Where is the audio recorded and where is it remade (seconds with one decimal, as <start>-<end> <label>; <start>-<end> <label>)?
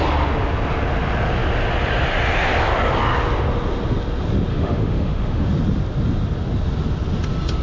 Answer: 0.0-4.5 recorded; 4.5-5.5 remade; 5.5-7.6 recorded